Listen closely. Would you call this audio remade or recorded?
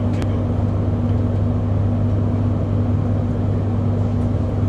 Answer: recorded